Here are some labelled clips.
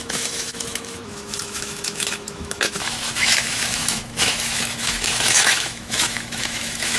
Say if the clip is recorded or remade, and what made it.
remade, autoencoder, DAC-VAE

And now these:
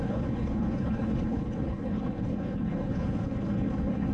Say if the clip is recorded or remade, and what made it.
remade, codec, HILCodec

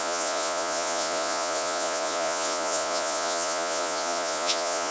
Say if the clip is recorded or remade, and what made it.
remade, vocoder, Vocos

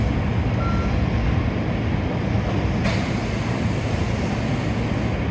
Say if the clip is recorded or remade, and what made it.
recorded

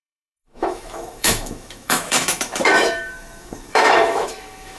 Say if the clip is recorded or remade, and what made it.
remade, autoencoder, DAC-VAE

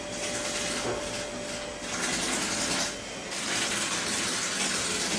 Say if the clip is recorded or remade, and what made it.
recorded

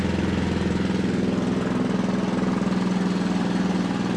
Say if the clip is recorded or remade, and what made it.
recorded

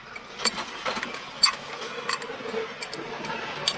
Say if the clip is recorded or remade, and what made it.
recorded